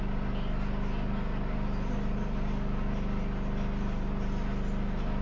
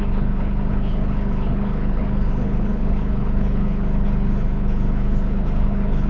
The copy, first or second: second